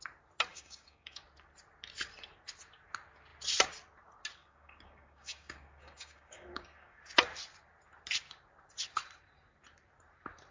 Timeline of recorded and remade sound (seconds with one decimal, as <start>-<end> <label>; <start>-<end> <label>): 0.0-0.5 recorded; 0.5-1.2 remade; 1.2-4.4 recorded; 4.4-7.0 remade; 7.0-10.5 recorded